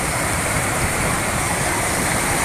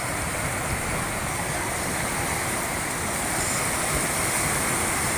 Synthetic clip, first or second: first